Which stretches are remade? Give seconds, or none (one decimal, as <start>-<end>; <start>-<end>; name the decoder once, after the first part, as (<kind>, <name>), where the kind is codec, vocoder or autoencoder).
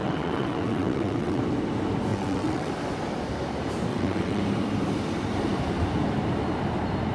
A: 0.0-1.4 (vocoder, WaveNeXt); 2.1-2.7; 3.9-4.4